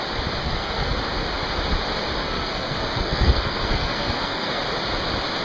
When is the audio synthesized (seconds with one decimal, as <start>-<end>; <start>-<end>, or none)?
0.4-1.0; 2.2-4.6